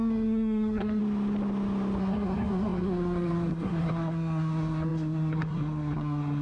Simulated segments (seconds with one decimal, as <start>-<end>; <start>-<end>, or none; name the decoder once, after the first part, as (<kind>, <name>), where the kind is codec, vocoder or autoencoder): 0.0-1.0 (codec, SNAC); 2.0-6.4